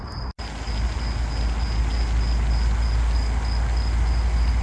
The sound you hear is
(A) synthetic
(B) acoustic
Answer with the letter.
B